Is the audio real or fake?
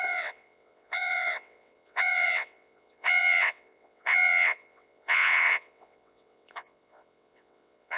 fake